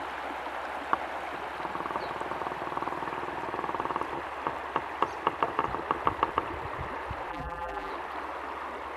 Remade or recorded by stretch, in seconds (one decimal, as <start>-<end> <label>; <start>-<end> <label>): 0.0-7.3 recorded; 7.3-7.9 remade; 7.9-9.0 recorded